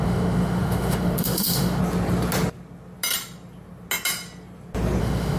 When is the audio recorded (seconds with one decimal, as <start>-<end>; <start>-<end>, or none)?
1.8-5.0